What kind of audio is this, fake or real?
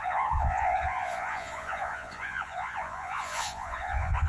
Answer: fake